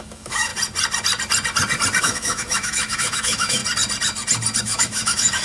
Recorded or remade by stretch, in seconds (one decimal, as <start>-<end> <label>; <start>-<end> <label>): 0.0-0.5 remade; 0.5-2.0 recorded; 2.0-3.6 remade; 3.6-4.6 recorded; 4.6-5.4 remade